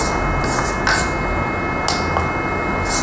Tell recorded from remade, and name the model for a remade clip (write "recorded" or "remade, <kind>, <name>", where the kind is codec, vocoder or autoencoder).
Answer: recorded